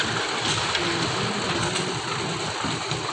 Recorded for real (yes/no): yes